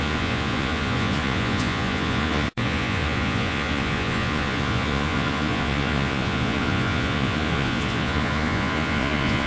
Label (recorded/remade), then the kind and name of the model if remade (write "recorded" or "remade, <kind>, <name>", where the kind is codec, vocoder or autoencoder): remade, vocoder, Vocos